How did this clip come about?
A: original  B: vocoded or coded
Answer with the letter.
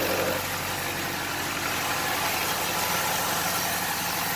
A